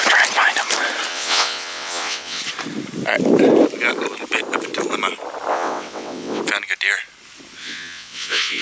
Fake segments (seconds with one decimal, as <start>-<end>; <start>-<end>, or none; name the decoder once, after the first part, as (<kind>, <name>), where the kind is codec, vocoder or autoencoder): 1.1-2.4 (vocoder, WaveNeXt); 5.5-6.4; 7.6-8.6